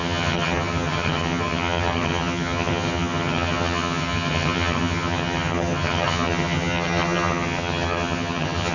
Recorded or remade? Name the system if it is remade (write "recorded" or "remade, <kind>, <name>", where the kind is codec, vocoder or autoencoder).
remade, vocoder, HiFi-GAN